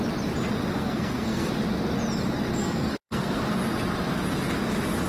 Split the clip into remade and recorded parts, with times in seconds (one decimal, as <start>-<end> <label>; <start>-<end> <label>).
0.0-0.7 recorded; 0.7-1.5 remade; 1.5-2.6 recorded; 2.6-3.4 remade; 3.4-5.1 recorded